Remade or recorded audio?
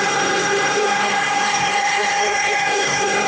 remade